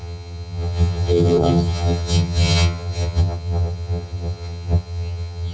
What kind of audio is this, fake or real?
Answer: fake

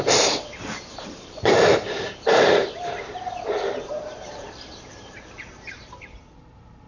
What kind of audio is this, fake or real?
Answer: fake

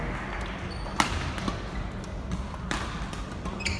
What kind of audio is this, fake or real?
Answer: real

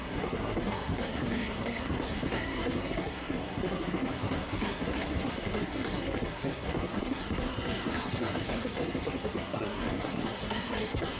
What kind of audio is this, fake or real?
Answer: fake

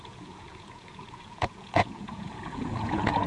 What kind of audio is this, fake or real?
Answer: fake